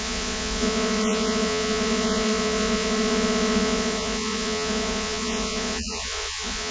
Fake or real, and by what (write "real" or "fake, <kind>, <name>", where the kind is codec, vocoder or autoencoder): fake, vocoder, Vocos